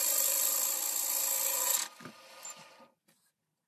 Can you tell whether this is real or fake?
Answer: real